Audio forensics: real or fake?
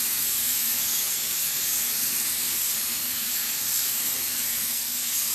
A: fake